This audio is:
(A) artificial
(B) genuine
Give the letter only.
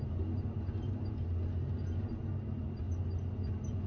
B